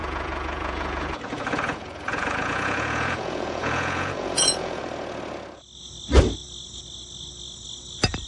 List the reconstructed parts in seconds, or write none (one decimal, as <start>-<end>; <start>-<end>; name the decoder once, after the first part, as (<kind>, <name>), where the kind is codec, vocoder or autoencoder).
0.0-4.8 (vocoder, Vocos)